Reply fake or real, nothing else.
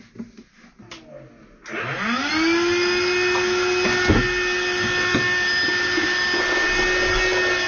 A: real